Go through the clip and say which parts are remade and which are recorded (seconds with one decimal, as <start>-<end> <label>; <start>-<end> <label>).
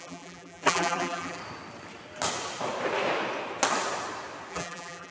0.0-1.4 remade; 1.4-4.5 recorded; 4.5-5.1 remade